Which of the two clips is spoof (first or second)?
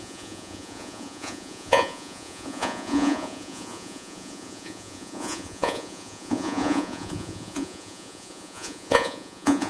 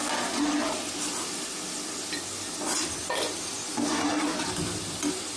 first